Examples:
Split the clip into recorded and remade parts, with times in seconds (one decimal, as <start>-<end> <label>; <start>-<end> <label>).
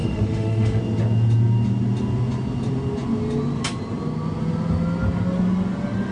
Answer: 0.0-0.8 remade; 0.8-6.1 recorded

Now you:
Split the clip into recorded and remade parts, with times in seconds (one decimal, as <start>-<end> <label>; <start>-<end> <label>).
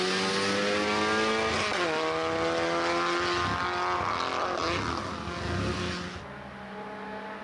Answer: 0.0-7.4 recorded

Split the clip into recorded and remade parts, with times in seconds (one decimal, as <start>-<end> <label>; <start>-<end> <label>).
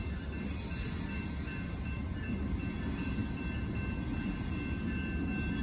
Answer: 0.0-5.6 recorded